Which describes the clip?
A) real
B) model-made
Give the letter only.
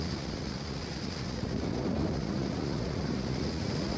B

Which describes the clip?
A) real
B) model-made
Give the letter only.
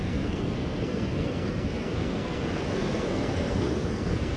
B